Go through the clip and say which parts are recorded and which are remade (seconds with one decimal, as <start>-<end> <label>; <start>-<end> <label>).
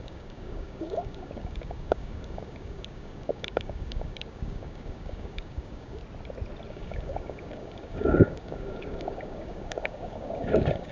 0.0-6.0 remade; 6.0-6.7 recorded; 6.7-10.9 remade